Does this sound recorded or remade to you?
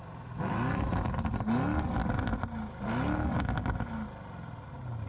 recorded